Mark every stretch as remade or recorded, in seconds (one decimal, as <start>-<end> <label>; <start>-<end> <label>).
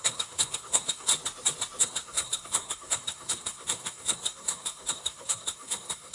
0.0-1.1 remade; 1.1-1.8 recorded; 1.8-6.1 remade